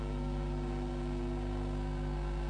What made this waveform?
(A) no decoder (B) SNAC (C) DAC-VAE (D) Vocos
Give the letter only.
B